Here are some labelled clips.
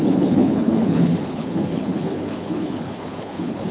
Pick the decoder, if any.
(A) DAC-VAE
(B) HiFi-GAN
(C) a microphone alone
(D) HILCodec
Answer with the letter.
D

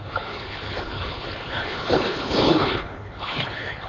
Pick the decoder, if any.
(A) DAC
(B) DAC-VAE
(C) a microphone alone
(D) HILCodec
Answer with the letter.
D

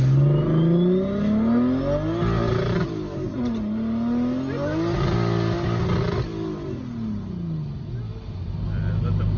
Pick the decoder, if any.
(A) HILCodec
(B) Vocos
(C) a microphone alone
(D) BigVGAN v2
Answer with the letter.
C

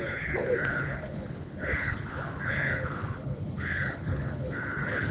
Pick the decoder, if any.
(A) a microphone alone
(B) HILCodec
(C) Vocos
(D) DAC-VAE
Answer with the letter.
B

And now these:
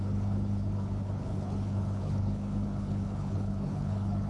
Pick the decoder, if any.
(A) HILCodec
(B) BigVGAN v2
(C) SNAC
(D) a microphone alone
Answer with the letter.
A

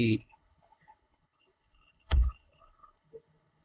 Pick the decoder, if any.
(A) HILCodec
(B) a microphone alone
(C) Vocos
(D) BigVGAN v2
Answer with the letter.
A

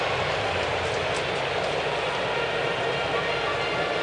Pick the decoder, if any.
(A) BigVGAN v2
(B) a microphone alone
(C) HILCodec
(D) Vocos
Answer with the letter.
B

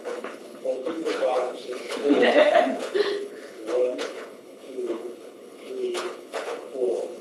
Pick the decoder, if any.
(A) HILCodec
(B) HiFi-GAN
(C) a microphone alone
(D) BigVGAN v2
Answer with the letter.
A